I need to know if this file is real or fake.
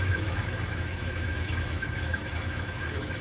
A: fake